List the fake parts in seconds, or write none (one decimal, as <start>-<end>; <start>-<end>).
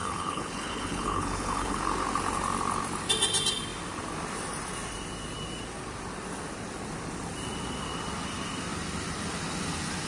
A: 0.0-1.8